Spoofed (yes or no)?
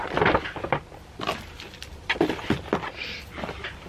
no